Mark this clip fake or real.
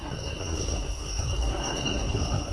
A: fake